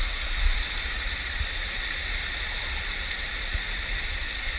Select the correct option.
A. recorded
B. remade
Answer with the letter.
A